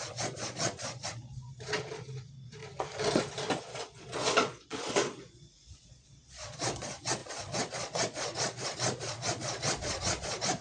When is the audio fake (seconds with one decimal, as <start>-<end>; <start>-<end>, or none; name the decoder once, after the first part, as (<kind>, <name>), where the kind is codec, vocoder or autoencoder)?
0.0-2.6 (vocoder, Vocos); 3.6-10.6